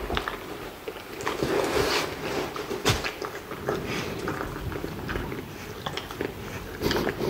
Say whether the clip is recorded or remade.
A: recorded